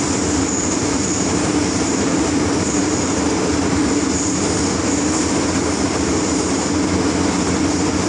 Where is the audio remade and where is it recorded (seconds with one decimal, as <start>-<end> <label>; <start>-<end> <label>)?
0.0-0.6 recorded; 0.6-3.7 remade; 3.7-5.6 recorded; 5.6-6.6 remade; 6.6-8.1 recorded